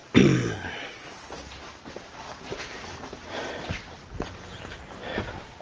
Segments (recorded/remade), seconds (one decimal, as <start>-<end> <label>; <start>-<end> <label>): 0.0-5.6 recorded